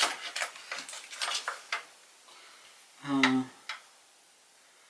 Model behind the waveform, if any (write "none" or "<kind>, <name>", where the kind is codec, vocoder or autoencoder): none